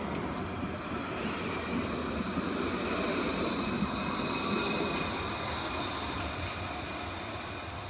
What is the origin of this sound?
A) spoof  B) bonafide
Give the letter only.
B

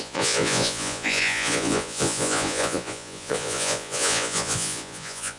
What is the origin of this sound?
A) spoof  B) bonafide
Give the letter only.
A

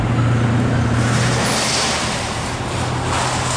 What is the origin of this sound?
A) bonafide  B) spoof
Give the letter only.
A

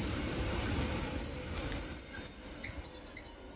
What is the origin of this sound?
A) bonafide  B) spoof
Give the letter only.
A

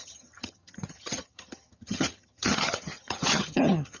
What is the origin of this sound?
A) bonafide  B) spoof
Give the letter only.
B